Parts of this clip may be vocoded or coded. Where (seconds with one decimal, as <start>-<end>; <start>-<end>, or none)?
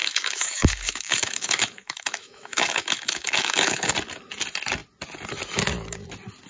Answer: 0.0-3.9